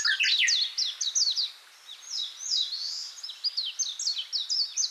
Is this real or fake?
real